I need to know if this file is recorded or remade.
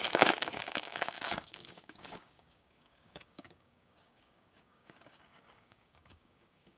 remade